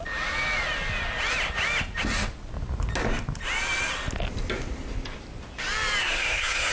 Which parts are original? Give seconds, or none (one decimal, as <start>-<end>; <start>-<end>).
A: 0.0-6.0